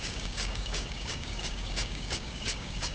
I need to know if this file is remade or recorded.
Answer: remade